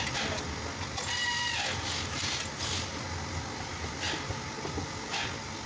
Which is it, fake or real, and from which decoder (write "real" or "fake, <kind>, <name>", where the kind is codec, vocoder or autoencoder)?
real